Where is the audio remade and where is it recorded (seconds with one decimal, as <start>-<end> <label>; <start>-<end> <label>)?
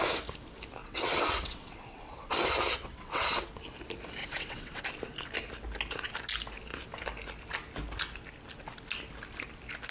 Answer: 0.0-0.8 recorded; 0.8-2.3 remade; 2.3-2.7 recorded; 2.7-3.4 remade; 3.4-4.2 recorded; 4.2-4.8 remade; 4.8-9.9 recorded